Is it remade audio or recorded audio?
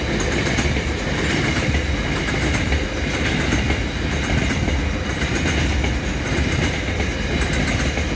recorded